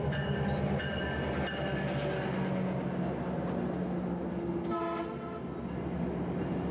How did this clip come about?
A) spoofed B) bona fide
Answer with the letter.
B